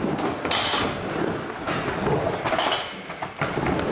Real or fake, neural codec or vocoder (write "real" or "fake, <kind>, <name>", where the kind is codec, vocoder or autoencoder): real